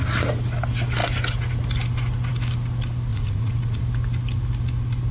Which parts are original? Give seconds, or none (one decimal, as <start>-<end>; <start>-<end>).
0.0-3.1; 3.8-5.1